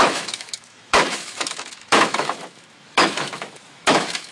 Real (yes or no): no